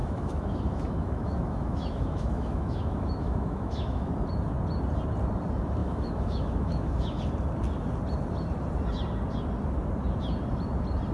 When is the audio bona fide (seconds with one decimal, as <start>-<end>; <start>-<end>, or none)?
4.1-5.8; 7.2-11.1